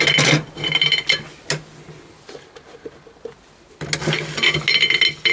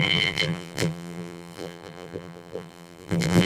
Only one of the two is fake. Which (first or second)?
second